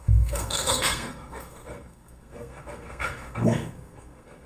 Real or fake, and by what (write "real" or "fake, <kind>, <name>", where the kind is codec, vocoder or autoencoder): fake, codec, SNAC